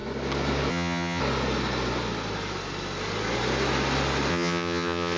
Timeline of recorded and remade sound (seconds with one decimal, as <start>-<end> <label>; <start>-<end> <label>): 0.0-0.7 recorded; 0.7-1.2 remade; 1.2-4.3 recorded; 4.3-5.2 remade